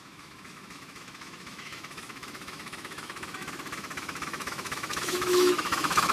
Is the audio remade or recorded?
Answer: remade